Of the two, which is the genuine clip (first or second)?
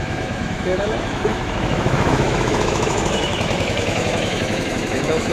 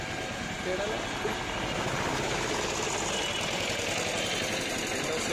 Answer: second